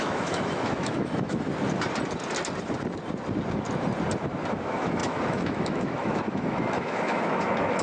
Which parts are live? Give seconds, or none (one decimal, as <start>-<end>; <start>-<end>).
1.5-4.5